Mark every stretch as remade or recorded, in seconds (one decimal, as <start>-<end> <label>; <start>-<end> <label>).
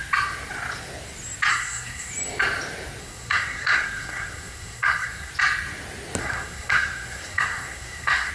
0.0-1.5 recorded; 1.5-2.1 remade; 2.1-3.0 recorded; 3.0-5.3 remade; 5.3-6.2 recorded; 6.2-8.3 remade